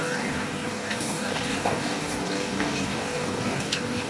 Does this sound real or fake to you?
fake